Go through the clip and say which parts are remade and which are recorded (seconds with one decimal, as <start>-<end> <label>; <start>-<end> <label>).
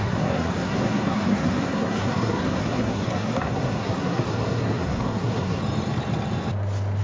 0.0-5.6 remade; 5.6-7.0 recorded